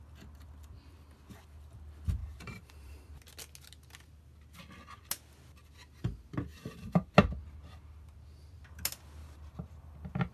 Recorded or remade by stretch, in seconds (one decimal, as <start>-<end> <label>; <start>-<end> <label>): 0.0-2.2 recorded; 2.2-3.1 remade; 3.1-6.5 recorded; 6.5-7.1 remade; 7.1-9.2 recorded; 9.2-9.8 remade; 9.8-10.3 recorded